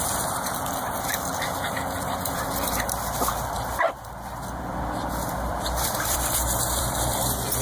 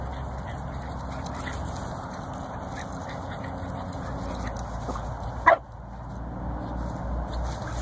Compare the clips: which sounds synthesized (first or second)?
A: first